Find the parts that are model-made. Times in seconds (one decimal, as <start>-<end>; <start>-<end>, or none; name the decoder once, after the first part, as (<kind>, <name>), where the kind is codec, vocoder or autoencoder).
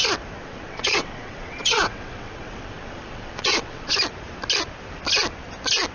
0.4-3.9 (vocoder, WaveNeXt)